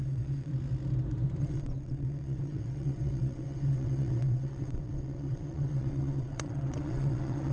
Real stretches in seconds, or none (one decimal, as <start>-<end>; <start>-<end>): 0.5-1.4